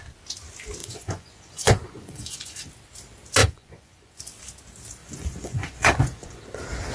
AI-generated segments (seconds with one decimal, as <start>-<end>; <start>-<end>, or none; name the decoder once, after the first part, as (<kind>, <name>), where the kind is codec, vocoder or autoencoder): 0.8-2.7 (vocoder, Vocos); 3.4-4.2; 5.0-6.4